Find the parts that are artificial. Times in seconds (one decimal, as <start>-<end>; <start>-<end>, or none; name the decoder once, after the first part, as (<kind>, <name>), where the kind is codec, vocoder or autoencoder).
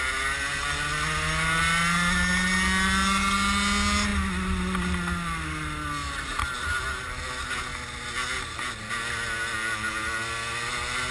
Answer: none